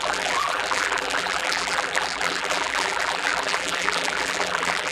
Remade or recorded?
remade